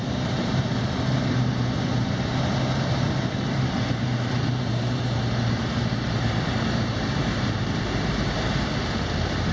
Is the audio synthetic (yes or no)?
yes